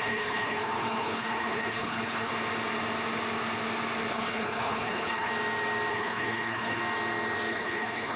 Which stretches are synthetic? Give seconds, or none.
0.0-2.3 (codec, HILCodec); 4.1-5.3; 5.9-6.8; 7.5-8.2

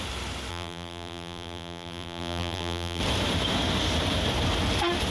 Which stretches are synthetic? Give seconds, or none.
0.5-3.0 (vocoder, BigVGAN v2)

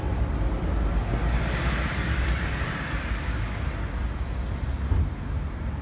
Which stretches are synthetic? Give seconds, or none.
1.2-3.1 (vocoder, BigVGAN v2)